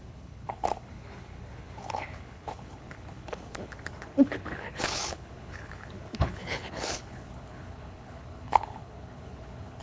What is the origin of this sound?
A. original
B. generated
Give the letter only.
B